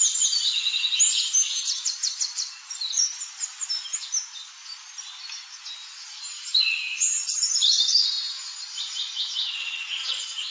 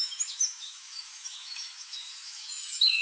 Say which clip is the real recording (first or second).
first